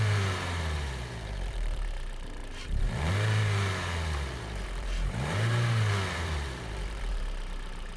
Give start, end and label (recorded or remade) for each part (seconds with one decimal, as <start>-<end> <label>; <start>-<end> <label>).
0.0-8.0 remade